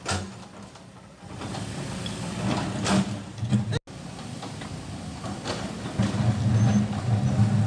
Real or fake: real